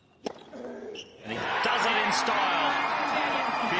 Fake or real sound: real